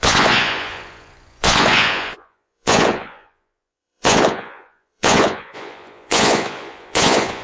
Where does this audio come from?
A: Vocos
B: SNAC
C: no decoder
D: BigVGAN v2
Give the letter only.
A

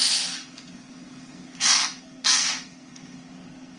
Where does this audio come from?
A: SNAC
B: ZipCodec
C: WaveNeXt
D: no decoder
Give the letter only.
A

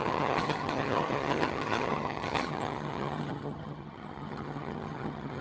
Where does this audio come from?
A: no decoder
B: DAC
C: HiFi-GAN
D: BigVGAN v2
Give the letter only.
C